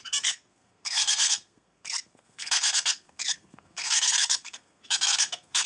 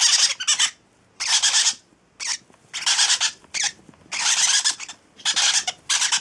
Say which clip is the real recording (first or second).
second